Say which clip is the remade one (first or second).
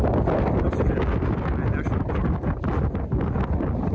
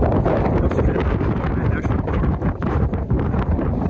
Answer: second